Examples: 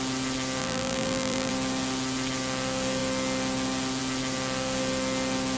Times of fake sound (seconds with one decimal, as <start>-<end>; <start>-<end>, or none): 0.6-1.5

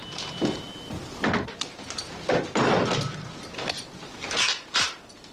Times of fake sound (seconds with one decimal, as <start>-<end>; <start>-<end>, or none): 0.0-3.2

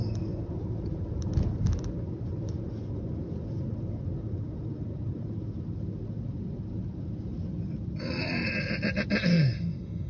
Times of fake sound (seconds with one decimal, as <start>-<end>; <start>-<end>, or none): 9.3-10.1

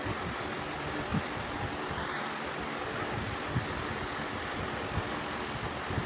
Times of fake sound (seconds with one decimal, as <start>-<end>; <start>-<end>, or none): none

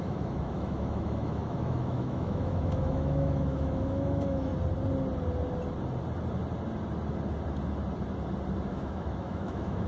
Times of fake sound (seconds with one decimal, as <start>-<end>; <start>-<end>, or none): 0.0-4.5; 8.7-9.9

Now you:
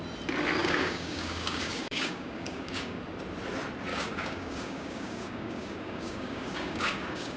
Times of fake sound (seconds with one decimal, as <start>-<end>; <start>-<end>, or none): 0.6-3.0; 3.9-7.4

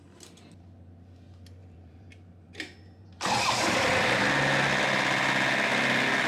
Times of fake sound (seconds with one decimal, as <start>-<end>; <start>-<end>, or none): 1.6-4.2

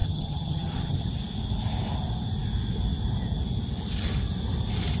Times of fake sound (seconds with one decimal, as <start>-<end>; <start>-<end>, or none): 0.0-1.1